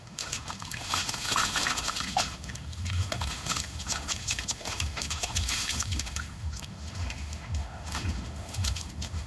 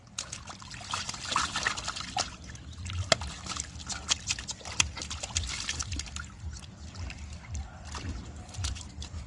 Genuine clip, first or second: second